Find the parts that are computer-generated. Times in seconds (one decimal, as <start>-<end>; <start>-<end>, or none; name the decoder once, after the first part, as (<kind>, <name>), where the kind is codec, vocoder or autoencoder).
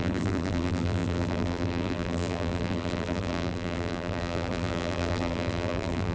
0.0-6.1 (vocoder, BigVGAN v2)